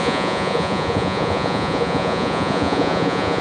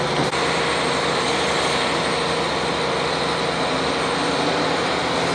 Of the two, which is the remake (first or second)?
first